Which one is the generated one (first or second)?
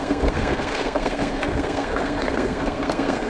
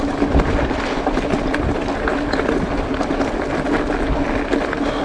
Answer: first